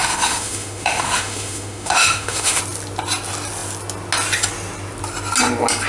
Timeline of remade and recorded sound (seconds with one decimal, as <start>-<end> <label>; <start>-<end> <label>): 0.0-2.6 remade; 2.6-5.9 recorded